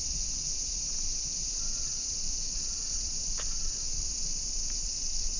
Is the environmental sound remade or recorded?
recorded